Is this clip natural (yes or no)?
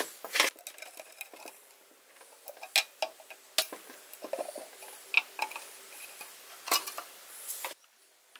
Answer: yes